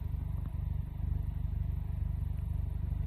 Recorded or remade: recorded